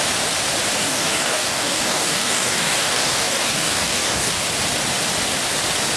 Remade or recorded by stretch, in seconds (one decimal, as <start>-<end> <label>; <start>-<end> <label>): 0.0-0.8 recorded; 0.8-4.4 remade; 4.4-6.0 recorded